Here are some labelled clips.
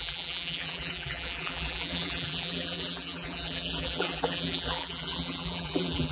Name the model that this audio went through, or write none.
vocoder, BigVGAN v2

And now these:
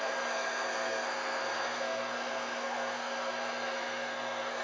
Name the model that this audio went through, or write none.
codec, SNAC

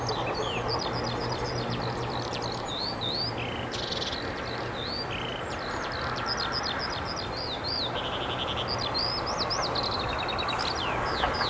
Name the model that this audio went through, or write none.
none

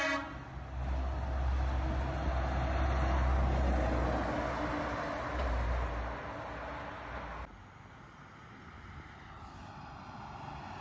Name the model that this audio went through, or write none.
none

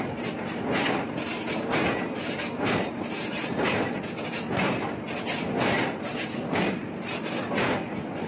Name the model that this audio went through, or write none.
none